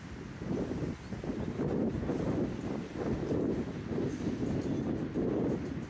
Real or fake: real